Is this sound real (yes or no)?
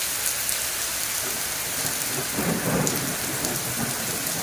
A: yes